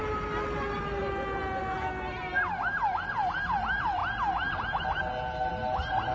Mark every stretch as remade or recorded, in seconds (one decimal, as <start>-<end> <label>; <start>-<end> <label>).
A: 0.0-6.1 recorded